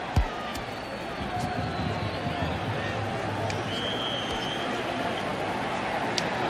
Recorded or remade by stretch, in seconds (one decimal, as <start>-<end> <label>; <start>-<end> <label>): 0.0-0.9 remade; 0.9-4.6 recorded; 4.6-5.3 remade; 5.3-6.5 recorded